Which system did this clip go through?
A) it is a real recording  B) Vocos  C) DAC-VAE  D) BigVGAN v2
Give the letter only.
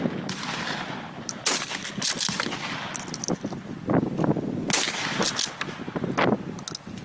A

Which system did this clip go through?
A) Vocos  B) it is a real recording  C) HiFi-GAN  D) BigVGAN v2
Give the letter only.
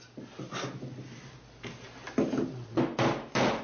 B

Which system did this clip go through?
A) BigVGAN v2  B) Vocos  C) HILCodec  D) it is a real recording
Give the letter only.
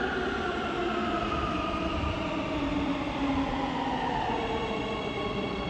A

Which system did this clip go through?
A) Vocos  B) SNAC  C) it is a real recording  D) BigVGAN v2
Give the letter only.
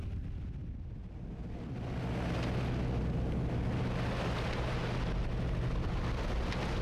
C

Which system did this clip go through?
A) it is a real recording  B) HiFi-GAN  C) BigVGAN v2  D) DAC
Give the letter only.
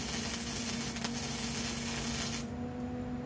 A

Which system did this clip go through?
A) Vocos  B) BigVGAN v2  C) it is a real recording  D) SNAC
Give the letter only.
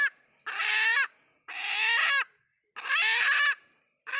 C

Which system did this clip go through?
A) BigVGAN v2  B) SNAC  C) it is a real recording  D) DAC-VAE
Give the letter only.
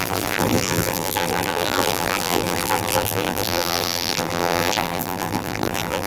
A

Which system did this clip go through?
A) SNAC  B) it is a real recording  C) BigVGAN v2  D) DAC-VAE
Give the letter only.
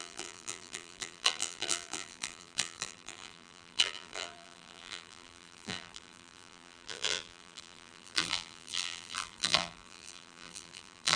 C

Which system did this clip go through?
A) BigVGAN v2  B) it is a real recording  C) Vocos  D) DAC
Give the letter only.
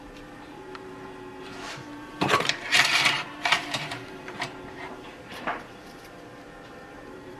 A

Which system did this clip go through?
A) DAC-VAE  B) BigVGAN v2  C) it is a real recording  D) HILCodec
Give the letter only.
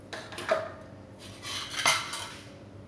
C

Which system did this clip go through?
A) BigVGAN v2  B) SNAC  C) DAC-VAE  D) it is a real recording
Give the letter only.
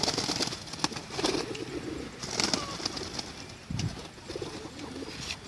D